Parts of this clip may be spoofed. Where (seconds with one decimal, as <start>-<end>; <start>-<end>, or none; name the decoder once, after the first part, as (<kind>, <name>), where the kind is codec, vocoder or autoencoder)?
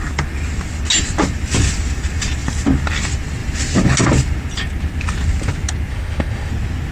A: 5.9-6.5 (autoencoder, DAC-VAE)